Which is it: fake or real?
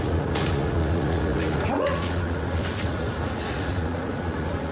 fake